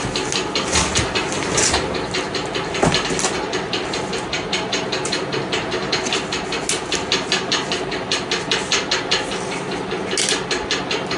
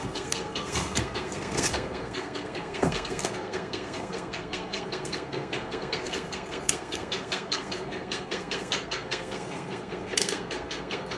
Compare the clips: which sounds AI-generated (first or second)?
second